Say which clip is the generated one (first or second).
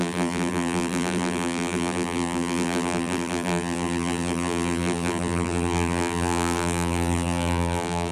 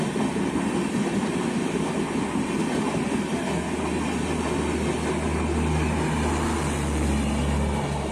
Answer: first